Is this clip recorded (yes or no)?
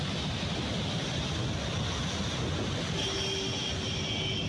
yes